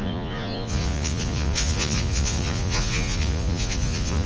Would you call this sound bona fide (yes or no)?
no